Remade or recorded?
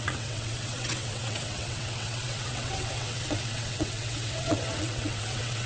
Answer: remade